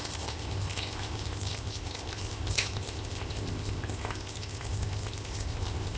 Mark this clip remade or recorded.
remade